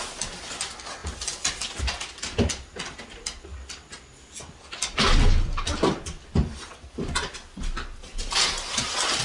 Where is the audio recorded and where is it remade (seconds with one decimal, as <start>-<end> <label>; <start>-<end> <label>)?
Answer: 0.0-9.2 recorded